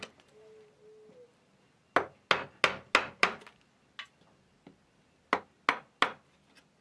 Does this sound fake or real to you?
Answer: real